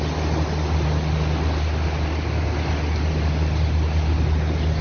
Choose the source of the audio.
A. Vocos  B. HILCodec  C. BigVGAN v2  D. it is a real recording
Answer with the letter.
D